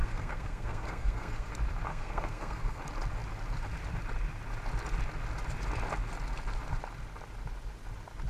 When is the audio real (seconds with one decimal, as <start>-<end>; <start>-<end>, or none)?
1.5-1.9; 2.8-8.3